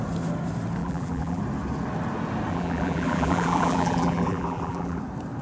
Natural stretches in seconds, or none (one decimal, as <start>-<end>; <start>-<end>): 0.0-0.8; 1.4-2.5; 5.0-5.4